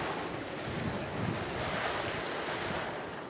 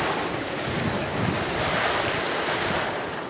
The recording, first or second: first